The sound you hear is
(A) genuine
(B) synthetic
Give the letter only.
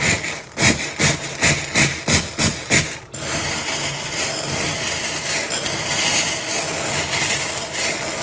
A